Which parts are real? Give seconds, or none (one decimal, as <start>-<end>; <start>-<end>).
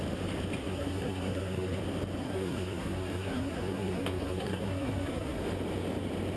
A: 0.0-0.6; 1.8-2.2; 5.4-6.4